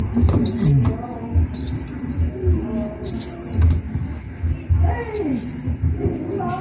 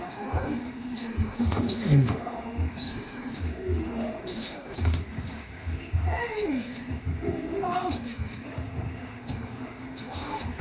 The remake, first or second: second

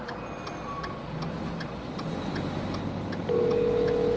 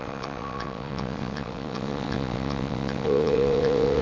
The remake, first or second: second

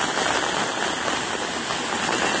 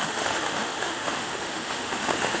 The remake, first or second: second